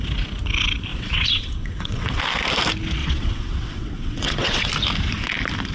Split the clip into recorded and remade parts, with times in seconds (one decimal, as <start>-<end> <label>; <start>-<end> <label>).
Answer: 0.0-0.9 recorded; 0.9-2.2 remade; 2.2-3.0 recorded; 3.0-4.7 remade; 4.7-5.7 recorded